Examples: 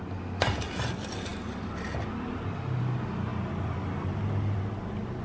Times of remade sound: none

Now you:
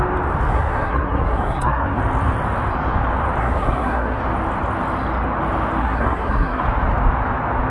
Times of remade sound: 0.5-2.0; 3.4-4.2; 5.8-6.6

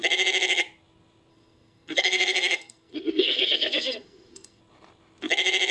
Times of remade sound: 1.3-4.6

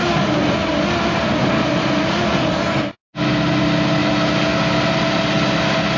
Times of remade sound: none